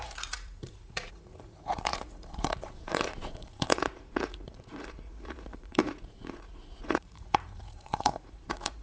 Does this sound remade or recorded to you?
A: remade